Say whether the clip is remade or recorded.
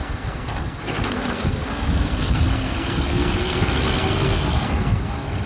remade